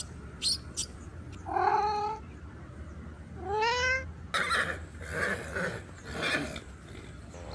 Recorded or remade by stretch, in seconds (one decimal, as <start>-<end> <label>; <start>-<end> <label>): 0.0-7.5 recorded